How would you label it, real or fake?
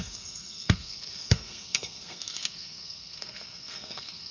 fake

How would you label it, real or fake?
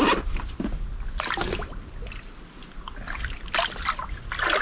real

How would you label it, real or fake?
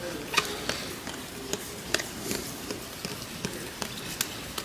real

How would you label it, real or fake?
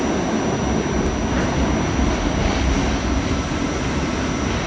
real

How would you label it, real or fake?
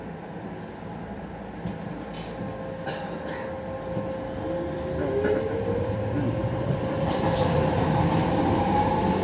real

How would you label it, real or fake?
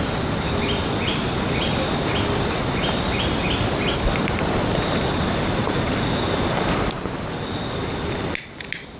real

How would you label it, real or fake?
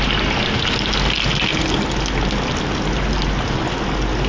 real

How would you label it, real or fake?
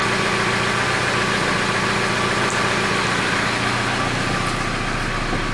real